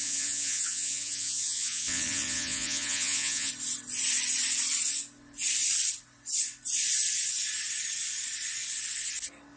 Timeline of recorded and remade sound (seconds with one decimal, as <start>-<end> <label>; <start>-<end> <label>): 0.0-3.5 remade; 3.5-9.6 recorded